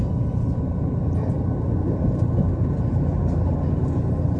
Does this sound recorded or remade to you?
recorded